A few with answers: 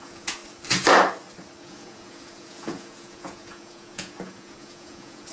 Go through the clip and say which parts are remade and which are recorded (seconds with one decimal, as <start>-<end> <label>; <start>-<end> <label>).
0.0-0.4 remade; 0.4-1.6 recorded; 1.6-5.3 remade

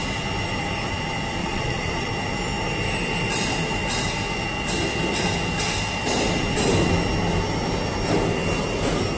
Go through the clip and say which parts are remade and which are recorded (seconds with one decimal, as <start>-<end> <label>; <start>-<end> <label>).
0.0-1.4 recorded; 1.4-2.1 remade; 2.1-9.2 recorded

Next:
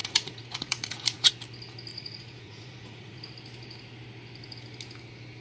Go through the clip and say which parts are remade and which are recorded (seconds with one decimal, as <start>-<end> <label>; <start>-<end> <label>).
0.0-1.3 remade; 1.3-1.9 recorded; 1.9-3.2 remade; 3.2-5.4 recorded

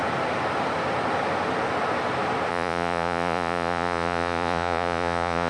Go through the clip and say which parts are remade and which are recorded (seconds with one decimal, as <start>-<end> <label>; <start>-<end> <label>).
0.0-2.5 recorded; 2.5-5.5 remade

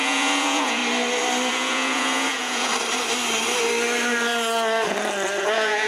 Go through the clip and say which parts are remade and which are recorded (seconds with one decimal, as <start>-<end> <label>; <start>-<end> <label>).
0.0-0.8 remade; 0.8-1.5 recorded; 1.5-2.7 remade; 2.7-5.4 recorded; 5.4-5.9 remade

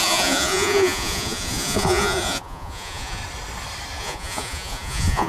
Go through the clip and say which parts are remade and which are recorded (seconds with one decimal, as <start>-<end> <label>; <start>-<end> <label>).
0.0-3.2 remade; 3.2-4.0 recorded; 4.0-5.3 remade